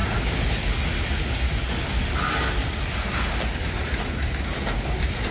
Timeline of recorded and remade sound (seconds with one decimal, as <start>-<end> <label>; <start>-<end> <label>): 0.0-0.5 remade; 0.5-5.3 recorded